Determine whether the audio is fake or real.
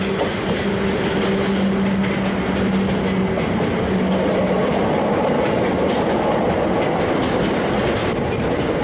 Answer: real